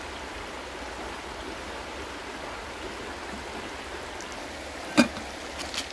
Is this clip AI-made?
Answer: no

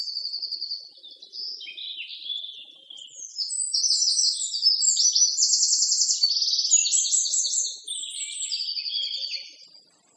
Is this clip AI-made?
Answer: no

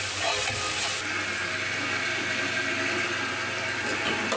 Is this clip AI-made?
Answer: no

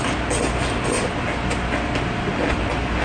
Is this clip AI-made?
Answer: no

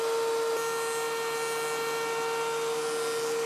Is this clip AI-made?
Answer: no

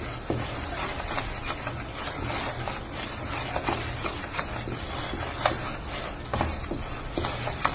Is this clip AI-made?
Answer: no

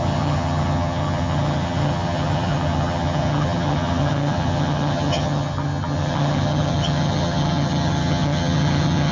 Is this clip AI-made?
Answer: yes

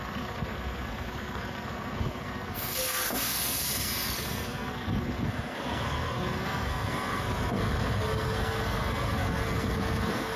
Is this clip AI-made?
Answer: yes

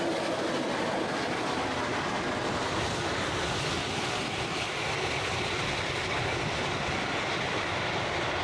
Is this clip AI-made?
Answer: no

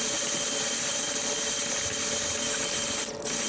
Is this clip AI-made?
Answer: no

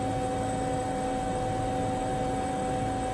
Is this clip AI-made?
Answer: no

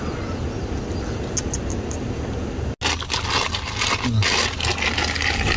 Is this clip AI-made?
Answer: no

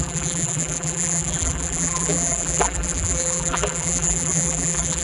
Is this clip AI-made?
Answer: yes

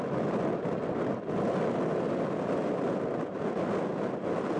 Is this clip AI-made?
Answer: no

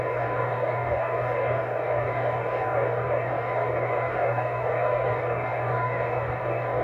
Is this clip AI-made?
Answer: yes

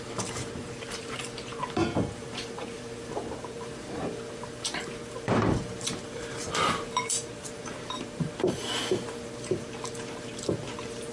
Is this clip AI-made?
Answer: yes